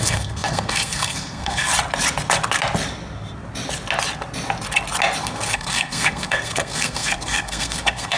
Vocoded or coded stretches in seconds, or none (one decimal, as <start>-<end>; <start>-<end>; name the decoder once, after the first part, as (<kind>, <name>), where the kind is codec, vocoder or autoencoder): 0.0-1.7 (codec, SNAC); 5.2-8.2